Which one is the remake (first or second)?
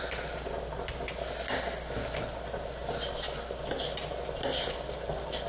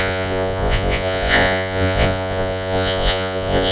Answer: second